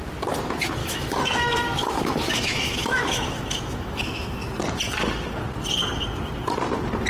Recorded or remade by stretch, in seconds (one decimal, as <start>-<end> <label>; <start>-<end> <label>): 0.0-0.8 recorded; 0.8-4.5 remade; 4.5-7.1 recorded